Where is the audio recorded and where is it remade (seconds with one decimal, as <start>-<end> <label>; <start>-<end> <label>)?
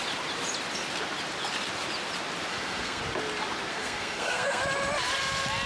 0.0-2.5 recorded; 2.5-3.0 remade; 3.0-3.7 recorded; 3.7-4.6 remade; 4.6-5.7 recorded